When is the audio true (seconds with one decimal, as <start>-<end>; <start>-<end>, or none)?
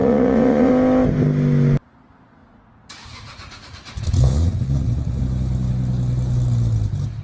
0.7-2.4; 5.2-7.2